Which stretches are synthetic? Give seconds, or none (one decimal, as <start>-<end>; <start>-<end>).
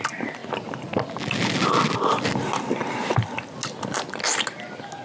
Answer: none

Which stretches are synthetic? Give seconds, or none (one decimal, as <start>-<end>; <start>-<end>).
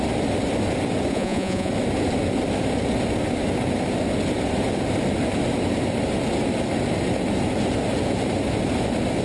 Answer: 1.1-1.7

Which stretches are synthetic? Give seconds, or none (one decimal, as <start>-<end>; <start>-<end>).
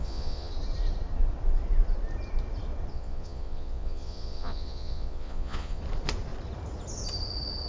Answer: 0.0-0.5; 2.9-5.8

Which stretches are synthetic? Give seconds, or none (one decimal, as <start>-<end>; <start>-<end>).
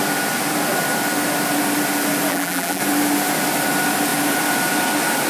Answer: 2.3-2.8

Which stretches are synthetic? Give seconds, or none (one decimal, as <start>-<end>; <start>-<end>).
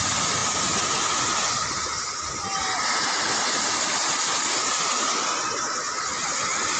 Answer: none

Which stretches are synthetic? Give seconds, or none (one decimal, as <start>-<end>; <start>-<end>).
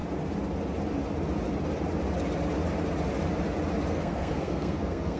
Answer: 3.9-5.2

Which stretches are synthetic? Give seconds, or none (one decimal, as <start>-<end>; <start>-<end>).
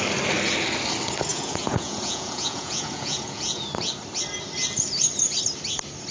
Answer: 1.3-3.6